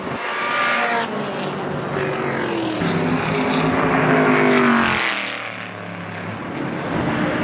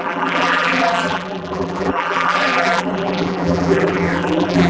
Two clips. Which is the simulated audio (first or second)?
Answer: second